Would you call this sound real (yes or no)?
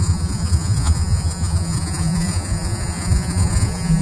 no